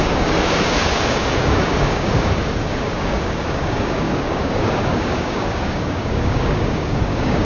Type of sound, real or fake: fake